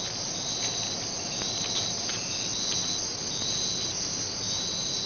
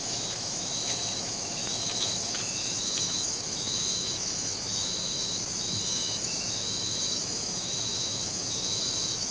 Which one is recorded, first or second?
first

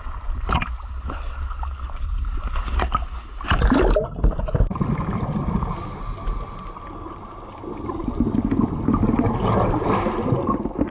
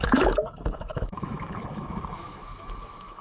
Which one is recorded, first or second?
first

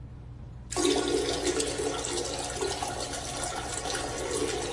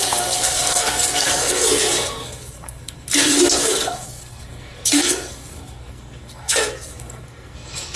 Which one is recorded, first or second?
first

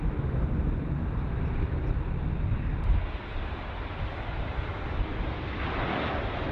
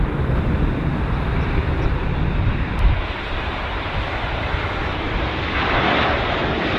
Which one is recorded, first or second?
first